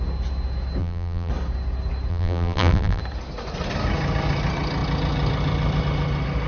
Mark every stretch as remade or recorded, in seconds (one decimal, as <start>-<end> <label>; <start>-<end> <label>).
0.0-0.8 recorded; 0.8-1.3 remade; 1.3-2.1 recorded; 2.1-3.0 remade; 3.0-6.5 recorded